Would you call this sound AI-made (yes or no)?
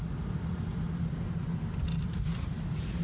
no